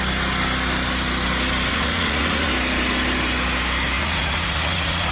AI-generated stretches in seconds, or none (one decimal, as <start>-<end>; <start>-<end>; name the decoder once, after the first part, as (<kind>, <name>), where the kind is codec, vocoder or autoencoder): 1.7-2.5 (vocoder, Vocos); 4.0-5.1